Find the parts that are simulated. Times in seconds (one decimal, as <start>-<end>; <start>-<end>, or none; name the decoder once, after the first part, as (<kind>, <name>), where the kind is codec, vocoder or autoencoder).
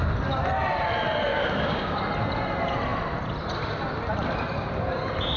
1.3-2.0 (codec, DAC)